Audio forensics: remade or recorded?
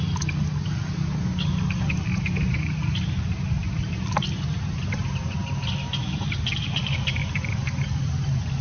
recorded